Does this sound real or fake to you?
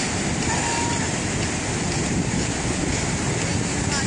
real